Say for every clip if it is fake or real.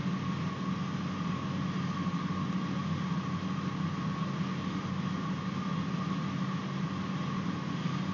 real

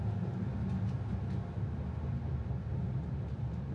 real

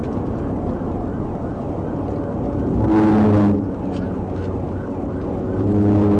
real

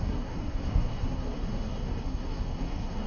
fake